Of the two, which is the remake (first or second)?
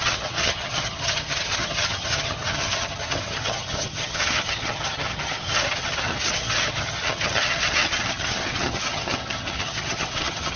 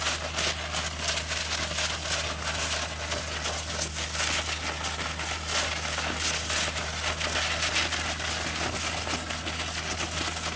first